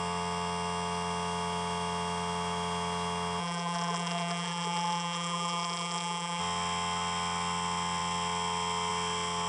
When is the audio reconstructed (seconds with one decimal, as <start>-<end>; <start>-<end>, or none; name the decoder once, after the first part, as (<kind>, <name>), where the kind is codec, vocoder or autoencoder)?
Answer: 3.4-6.4 (vocoder, BigVGAN v2)